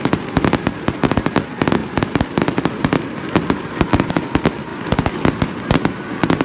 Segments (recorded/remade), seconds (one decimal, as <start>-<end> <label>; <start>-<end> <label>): 0.0-6.4 recorded